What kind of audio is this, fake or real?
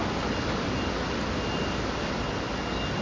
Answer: real